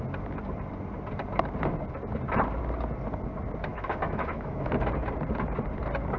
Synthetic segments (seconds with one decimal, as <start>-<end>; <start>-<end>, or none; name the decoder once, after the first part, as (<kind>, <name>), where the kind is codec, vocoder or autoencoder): 3.7-4.7 (autoencoder, DAC-VAE)

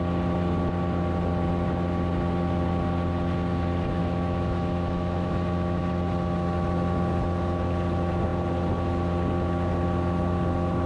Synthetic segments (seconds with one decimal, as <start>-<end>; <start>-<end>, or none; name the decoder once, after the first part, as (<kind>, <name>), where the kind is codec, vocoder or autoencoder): 4.0-5.9 (autoencoder, DAC-VAE)

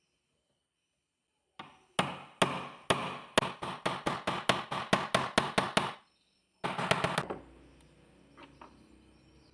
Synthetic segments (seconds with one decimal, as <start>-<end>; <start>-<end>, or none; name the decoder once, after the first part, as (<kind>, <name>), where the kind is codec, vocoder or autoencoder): none

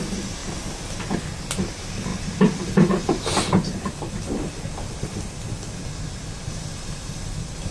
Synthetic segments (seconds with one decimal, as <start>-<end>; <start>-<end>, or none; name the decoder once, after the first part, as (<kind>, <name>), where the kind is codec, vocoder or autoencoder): none